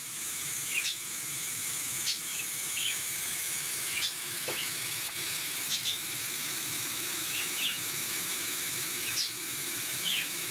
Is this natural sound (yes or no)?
no